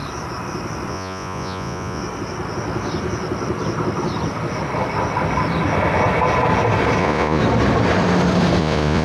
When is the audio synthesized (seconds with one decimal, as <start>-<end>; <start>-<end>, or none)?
0.9-2.0; 7.0-7.4; 8.6-9.0

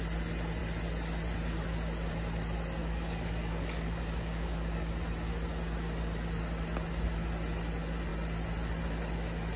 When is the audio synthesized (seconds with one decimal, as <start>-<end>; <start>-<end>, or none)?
2.8-4.9

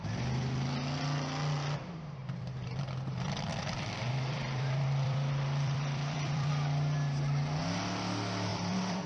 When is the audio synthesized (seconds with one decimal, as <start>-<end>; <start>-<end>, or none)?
2.2-6.5; 8.5-9.1

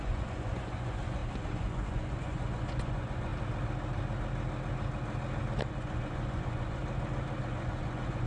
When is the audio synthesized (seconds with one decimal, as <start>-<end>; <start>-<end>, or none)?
0.0-3.3; 5.7-6.8; 7.4-8.3

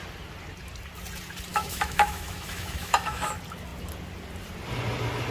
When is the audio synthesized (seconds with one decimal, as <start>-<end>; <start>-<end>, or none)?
1.5-3.3

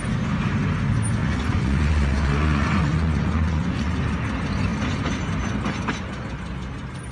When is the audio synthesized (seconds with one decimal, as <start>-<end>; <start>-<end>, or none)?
1.2-3.9